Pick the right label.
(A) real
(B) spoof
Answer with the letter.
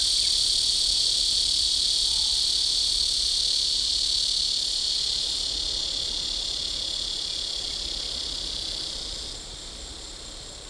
A